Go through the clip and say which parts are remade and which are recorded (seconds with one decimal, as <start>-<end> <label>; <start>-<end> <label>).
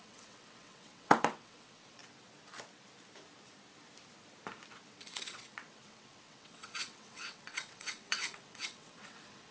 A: 0.0-2.0 remade; 2.0-5.1 recorded; 5.1-9.5 remade